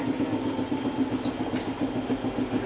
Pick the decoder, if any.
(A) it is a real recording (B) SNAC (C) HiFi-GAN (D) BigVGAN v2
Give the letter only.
A